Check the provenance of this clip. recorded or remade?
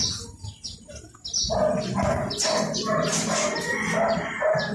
recorded